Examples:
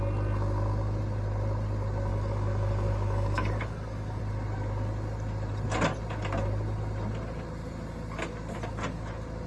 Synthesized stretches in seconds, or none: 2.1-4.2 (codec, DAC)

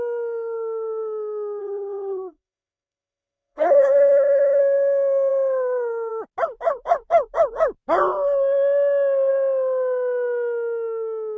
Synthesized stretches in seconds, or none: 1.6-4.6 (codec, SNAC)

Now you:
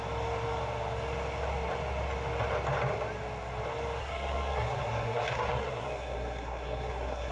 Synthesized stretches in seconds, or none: 4.0-7.3 (codec, SNAC)